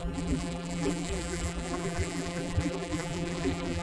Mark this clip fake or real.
fake